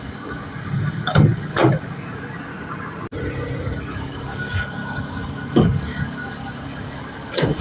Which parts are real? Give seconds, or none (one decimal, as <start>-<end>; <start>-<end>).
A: 2.5-3.6